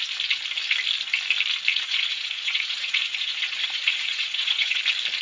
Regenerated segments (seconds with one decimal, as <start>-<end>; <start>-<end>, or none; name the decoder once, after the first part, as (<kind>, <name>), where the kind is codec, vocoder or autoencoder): 1.7-4.8 (vocoder, Vocos)